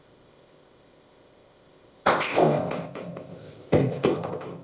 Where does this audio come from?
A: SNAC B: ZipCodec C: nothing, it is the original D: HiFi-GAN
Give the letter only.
B